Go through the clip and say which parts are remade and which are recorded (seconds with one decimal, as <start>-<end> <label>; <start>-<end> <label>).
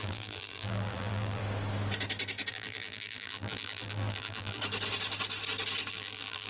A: 0.0-1.4 remade; 1.4-2.5 recorded; 2.5-4.6 remade; 4.6-5.9 recorded; 5.9-6.5 remade